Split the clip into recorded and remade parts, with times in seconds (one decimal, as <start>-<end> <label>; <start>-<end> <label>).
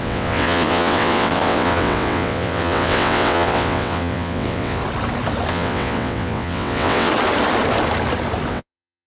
0.0-4.8 remade; 4.8-5.5 recorded; 5.5-7.1 remade; 7.1-8.5 recorded; 8.5-9.1 remade